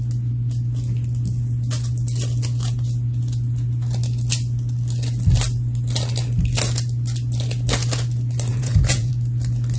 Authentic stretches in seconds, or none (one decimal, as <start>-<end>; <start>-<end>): 0.0-8.5; 9.1-9.8